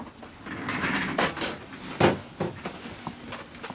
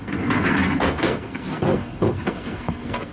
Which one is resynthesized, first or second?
second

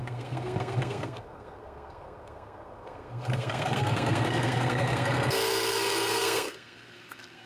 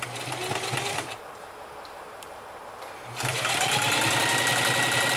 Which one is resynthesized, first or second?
first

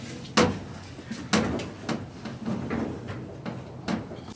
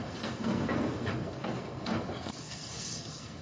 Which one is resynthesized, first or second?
second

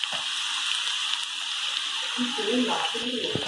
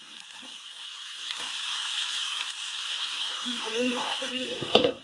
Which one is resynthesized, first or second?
second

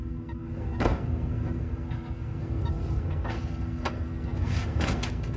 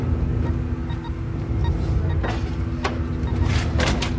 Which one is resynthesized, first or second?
first